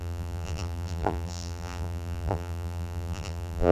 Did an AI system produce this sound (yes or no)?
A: yes